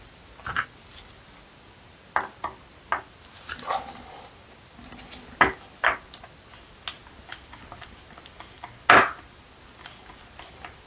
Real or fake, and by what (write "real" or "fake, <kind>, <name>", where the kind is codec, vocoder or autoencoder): real